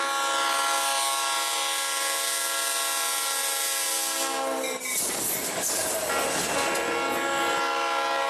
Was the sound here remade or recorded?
recorded